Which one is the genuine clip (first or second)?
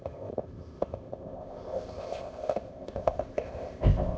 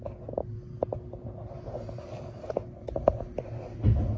second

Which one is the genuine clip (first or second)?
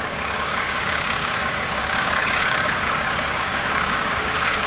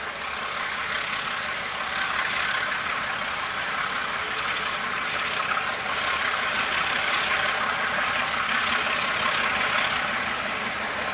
second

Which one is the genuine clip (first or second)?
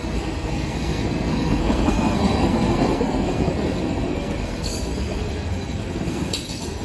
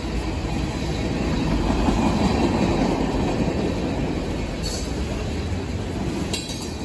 second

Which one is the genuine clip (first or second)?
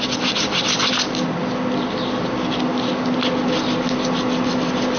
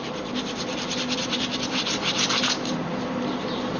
first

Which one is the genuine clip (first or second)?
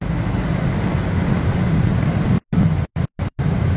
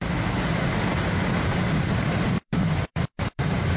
first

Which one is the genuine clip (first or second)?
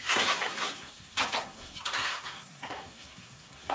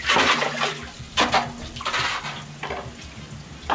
second